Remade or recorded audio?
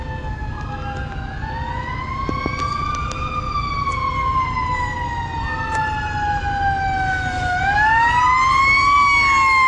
recorded